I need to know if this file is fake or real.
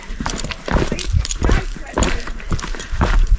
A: fake